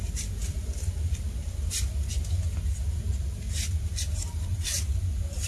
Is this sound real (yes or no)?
no